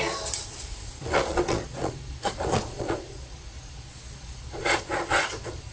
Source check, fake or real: fake